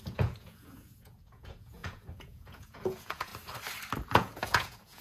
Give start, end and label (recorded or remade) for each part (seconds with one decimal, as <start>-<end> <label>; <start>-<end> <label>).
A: 0.0-3.3 remade; 3.3-4.1 recorded; 4.1-5.0 remade